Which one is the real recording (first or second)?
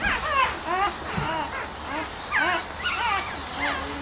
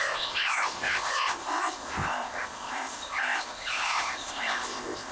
first